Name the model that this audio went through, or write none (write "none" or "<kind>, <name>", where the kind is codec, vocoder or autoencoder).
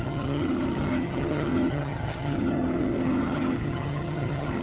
vocoder, HiFi-GAN